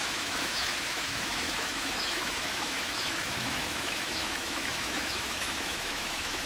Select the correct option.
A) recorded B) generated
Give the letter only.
B